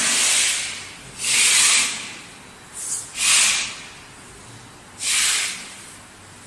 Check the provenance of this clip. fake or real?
real